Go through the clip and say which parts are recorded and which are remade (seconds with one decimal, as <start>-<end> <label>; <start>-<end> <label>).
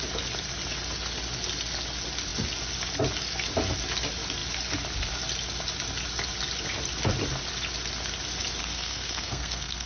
0.0-8.6 recorded; 8.6-9.9 remade